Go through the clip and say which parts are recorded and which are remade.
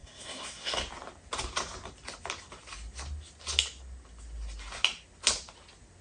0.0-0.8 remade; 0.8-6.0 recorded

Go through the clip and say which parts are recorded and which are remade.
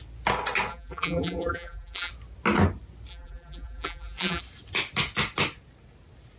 0.0-0.7 recorded; 0.7-2.1 remade; 2.1-3.1 recorded; 3.1-4.4 remade; 4.4-6.4 recorded